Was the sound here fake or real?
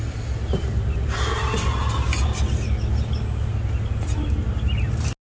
real